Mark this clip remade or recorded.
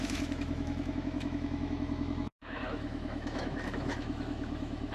remade